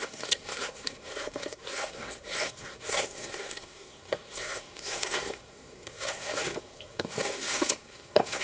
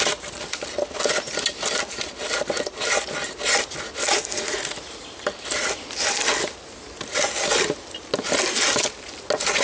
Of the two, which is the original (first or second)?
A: second